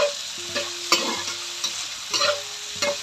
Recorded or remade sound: recorded